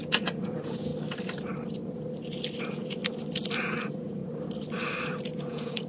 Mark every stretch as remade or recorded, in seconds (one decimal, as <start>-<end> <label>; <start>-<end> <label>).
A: 0.0-0.9 remade; 0.9-2.6 recorded; 2.6-3.0 remade; 3.0-3.6 recorded; 3.6-4.2 remade; 4.2-5.2 recorded; 5.2-5.9 remade